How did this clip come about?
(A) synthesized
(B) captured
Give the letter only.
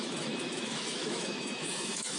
A